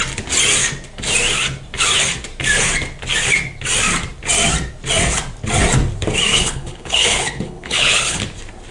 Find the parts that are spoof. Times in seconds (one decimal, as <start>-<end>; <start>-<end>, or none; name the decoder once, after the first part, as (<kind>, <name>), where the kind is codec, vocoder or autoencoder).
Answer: 6.3-8.2 (codec, HILCodec)